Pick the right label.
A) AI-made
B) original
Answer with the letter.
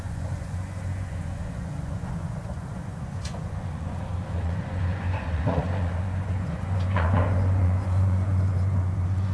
A